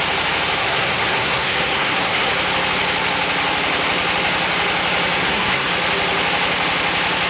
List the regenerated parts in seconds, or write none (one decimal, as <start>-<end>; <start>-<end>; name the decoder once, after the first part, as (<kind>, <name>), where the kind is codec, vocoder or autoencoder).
0.6-2.3 (codec, SNAC); 5.2-5.7

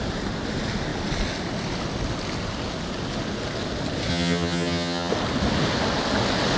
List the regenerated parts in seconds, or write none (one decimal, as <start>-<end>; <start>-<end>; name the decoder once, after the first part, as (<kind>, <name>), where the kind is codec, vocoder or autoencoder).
4.1-5.1 (vocoder, HiFi-GAN)

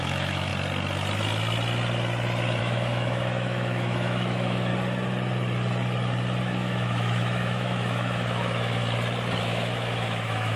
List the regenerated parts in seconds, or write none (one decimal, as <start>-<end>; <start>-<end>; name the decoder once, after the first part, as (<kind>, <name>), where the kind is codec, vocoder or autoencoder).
0.0-0.5 (autoencoder, DAC-VAE); 2.6-4.7; 6.4-8.8; 9.4-10.6

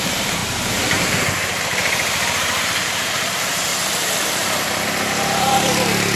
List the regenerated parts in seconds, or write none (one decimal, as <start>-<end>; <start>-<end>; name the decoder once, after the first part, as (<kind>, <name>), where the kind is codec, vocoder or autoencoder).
0.0-3.7 (vocoder, BigVGAN v2); 5.1-6.2

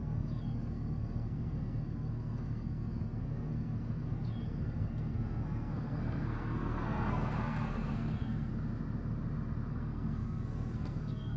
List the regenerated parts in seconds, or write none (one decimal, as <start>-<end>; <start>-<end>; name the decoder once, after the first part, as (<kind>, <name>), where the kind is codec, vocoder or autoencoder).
0.0-8.5 (codec, SNAC); 9.7-11.4

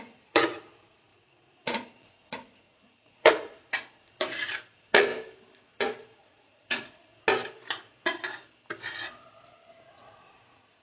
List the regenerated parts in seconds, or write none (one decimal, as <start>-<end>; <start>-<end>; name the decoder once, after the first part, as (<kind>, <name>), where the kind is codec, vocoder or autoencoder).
0.0-5.1 (vocoder, Vocos); 5.8-7.1; 9.6-10.8